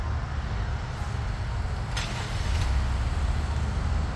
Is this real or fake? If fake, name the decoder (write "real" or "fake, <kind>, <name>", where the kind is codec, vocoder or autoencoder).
real